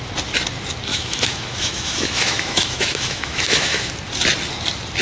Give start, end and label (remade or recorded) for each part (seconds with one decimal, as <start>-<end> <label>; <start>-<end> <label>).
0.0-0.9 recorded; 0.9-3.9 remade; 3.9-5.0 recorded